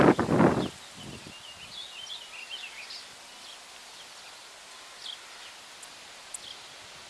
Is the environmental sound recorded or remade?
recorded